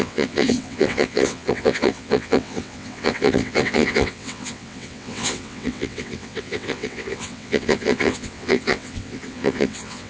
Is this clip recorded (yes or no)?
no